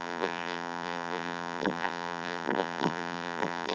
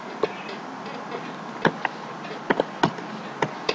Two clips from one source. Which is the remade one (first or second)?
first